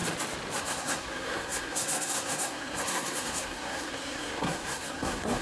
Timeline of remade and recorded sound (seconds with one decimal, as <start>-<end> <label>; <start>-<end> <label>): 0.0-0.6 recorded; 0.6-5.4 remade